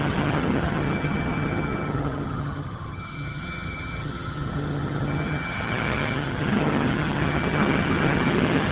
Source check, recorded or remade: remade